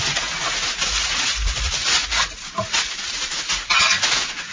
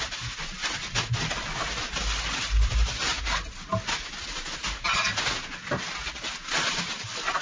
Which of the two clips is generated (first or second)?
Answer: first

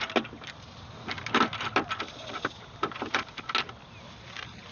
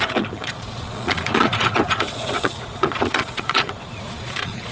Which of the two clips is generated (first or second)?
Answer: second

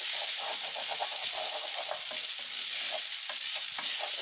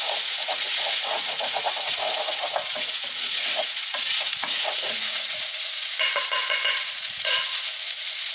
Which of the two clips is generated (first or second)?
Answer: second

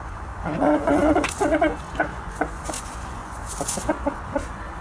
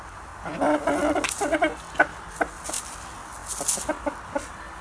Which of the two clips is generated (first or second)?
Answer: first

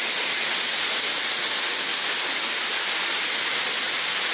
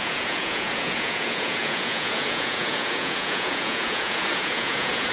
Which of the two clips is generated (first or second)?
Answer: second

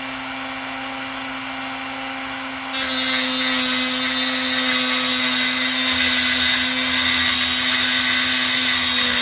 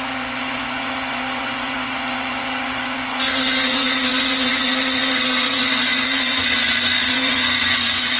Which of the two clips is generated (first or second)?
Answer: second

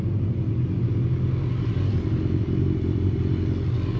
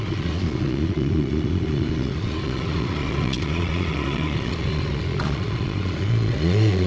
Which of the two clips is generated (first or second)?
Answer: second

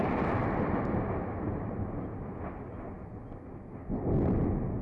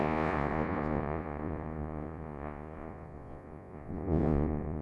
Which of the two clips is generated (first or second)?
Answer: second